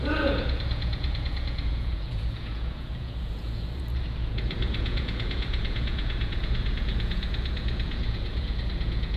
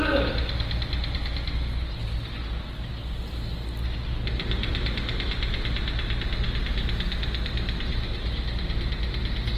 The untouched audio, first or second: second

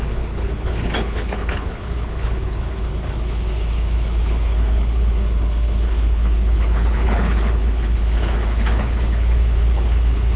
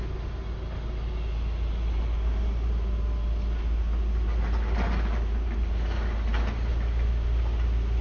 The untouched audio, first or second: second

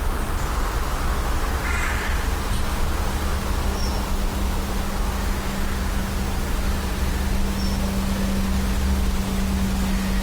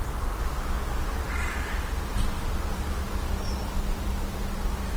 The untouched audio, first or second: first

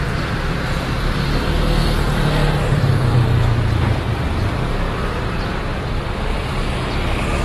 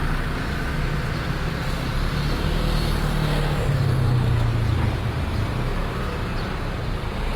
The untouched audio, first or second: second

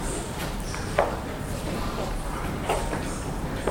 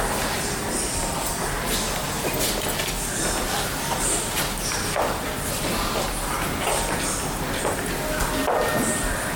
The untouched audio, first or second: second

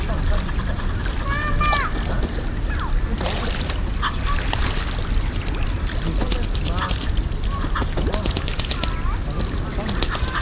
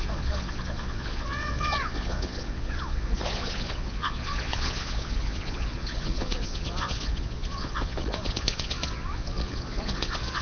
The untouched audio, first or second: first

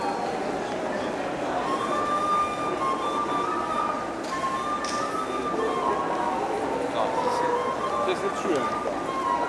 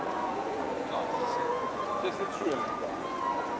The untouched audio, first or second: first